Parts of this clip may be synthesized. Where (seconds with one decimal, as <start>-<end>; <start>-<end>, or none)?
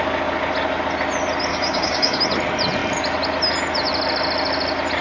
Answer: 1.5-2.2